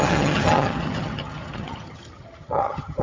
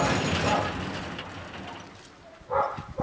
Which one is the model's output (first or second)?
first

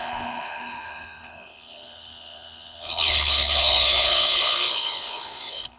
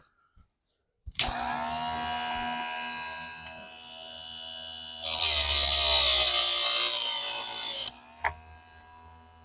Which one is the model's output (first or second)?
first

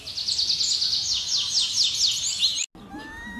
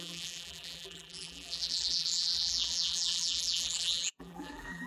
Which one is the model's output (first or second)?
second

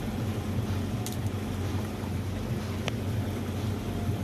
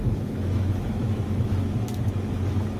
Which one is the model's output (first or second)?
second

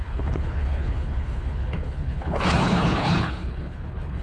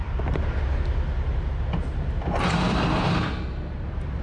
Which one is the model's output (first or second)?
first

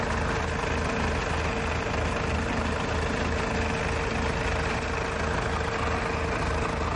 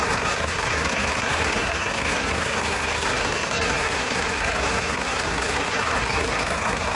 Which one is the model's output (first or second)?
second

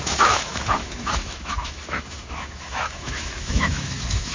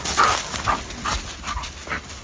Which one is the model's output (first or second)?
first